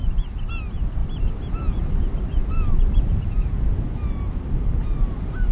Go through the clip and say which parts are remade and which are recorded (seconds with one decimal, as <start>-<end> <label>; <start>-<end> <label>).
0.0-0.5 remade; 0.5-2.4 recorded; 2.4-3.5 remade; 3.5-5.5 recorded